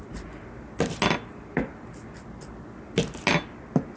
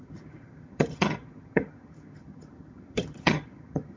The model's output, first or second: second